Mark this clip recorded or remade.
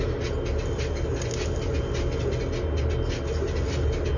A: recorded